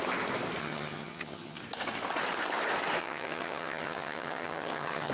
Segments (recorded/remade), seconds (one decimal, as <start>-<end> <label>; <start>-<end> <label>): 0.0-0.6 recorded; 0.6-1.6 remade; 1.6-3.0 recorded; 3.0-5.1 remade